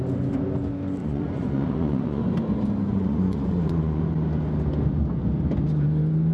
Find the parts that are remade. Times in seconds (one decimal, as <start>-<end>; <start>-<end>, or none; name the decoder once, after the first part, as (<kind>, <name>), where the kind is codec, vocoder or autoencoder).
1.0-2.2 (vocoder, Vocos); 2.9-4.0